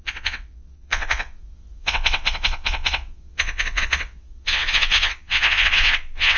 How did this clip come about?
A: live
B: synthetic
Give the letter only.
B